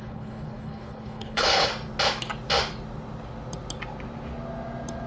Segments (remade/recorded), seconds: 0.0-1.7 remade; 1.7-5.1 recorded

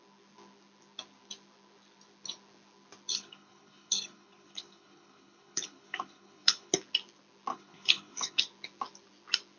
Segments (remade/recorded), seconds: 0.0-3.1 recorded; 3.1-6.7 remade; 6.7-7.5 recorded; 7.5-8.4 remade; 8.4-9.6 recorded

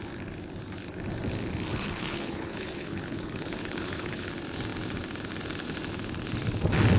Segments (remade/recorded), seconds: 0.0-1.7 recorded; 1.7-4.3 remade; 4.3-7.0 recorded

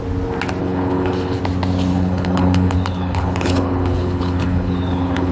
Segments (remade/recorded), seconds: 0.0-0.6 recorded; 0.6-1.4 remade; 1.4-1.9 recorded; 1.9-5.3 remade

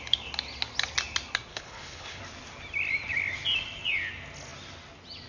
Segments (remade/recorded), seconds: 0.0-1.5 recorded; 1.5-2.2 remade; 2.2-5.3 recorded

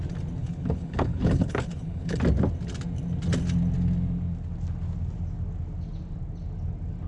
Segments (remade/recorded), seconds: 0.0-0.4 recorded; 0.4-2.2 remade; 2.2-7.1 recorded

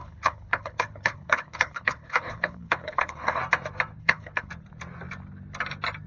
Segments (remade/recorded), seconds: 0.0-3.4 remade; 3.4-4.0 recorded; 4.0-4.5 remade; 4.5-6.1 recorded

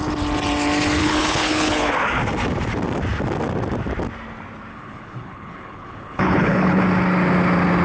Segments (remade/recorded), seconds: 0.0-1.0 recorded; 1.0-1.9 remade; 1.9-4.7 recorded; 4.7-6.8 remade; 6.8-7.8 recorded